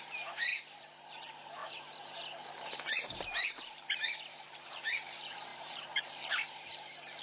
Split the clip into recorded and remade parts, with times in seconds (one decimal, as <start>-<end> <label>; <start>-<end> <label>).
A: 0.0-0.5 remade; 0.5-1.1 recorded; 1.1-7.2 remade